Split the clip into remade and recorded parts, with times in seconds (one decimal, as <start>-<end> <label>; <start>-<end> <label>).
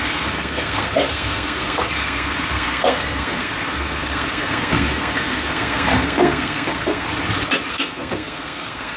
0.0-7.1 remade; 7.1-7.7 recorded; 7.7-9.0 remade